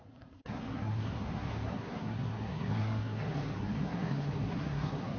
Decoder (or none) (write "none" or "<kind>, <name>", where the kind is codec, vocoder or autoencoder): codec, SNAC